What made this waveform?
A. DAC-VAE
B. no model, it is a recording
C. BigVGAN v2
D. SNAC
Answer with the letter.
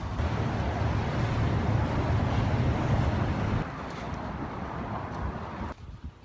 B